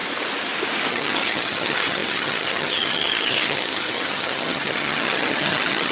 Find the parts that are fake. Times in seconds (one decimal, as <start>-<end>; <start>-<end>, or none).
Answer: 0.9-5.9

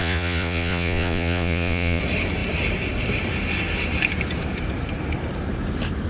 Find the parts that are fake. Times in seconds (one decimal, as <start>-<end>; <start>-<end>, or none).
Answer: 0.0-2.0

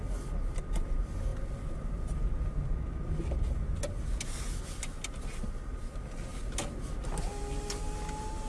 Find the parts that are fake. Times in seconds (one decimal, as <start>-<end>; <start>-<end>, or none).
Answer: none

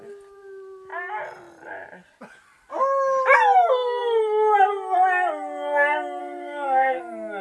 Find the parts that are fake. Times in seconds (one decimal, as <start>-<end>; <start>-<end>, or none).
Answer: 6.2-7.0

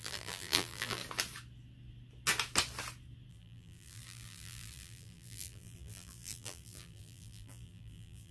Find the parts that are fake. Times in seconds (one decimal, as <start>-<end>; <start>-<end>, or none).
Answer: 0.0-1.0; 3.3-8.3